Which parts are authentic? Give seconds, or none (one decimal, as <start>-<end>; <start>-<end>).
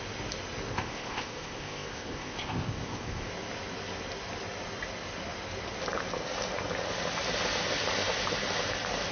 0.0-0.7; 3.3-9.1